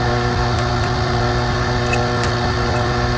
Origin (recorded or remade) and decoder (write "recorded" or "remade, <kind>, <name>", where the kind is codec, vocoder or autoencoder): recorded